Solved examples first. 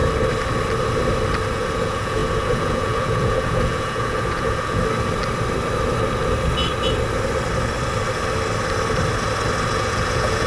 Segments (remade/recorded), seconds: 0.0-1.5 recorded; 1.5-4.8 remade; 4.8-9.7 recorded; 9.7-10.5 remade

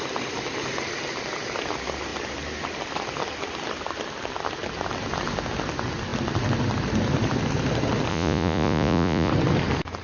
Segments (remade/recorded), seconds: 0.0-8.1 recorded; 8.1-9.3 remade; 9.3-10.0 recorded

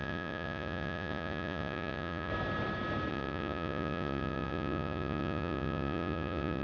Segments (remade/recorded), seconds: 0.0-2.3 remade; 2.3-3.1 recorded; 3.1-6.6 remade

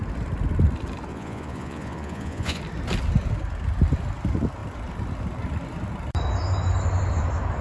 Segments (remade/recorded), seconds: 0.0-1.1 recorded; 1.1-2.6 remade; 2.6-7.6 recorded

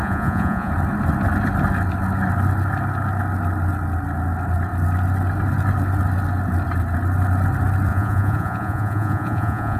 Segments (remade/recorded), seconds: 0.0-0.7 remade; 0.7-7.9 recorded; 7.9-9.8 remade

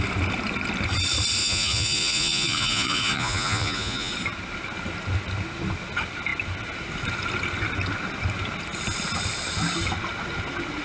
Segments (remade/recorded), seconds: 0.0-1.4 recorded; 1.4-4.1 remade; 4.1-10.8 recorded